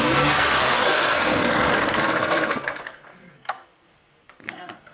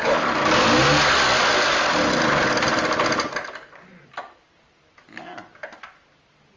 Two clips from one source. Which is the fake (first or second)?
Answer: first